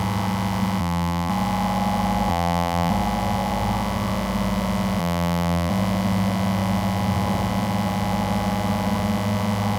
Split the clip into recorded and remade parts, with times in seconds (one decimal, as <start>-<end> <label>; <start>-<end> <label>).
0.0-0.8 recorded; 0.8-1.3 remade; 1.3-2.3 recorded; 2.3-2.9 remade; 2.9-5.0 recorded; 5.0-5.7 remade; 5.7-9.8 recorded